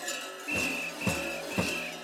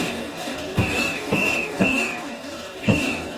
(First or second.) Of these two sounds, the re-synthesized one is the second